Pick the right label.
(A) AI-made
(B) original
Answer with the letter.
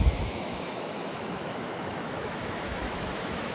A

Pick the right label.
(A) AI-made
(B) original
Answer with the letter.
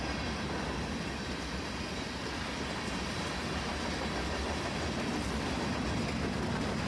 B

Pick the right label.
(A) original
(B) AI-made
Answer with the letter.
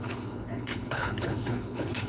B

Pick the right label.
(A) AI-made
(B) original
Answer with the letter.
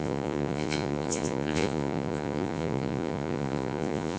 A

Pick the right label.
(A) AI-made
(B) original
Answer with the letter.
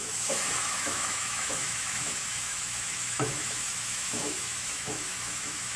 A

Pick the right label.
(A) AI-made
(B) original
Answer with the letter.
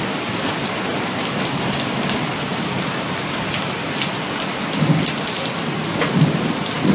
B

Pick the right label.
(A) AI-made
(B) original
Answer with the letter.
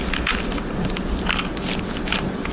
B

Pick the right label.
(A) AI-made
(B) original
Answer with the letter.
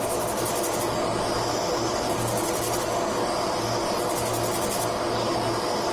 B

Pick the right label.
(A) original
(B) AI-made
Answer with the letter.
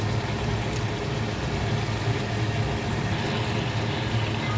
A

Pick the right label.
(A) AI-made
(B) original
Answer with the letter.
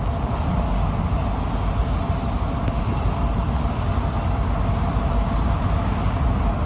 B